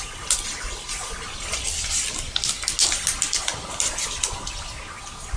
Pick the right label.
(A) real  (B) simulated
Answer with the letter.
A